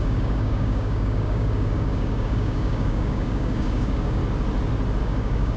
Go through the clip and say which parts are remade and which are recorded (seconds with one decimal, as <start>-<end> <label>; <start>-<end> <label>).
0.0-4.2 remade; 4.2-5.0 recorded; 5.0-5.6 remade